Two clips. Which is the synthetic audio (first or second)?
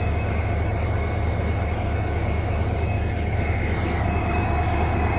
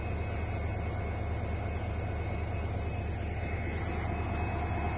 first